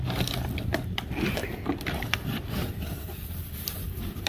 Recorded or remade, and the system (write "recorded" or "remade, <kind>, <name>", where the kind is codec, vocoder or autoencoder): remade, vocoder, BigVGAN v2